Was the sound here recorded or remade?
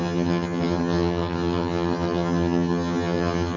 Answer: remade